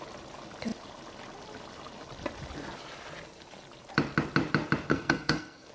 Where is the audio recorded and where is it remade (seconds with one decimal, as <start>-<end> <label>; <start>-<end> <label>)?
0.0-4.9 recorded; 4.9-5.7 remade